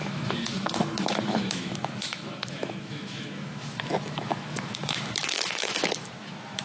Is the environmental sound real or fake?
fake